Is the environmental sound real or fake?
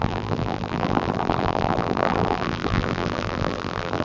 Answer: fake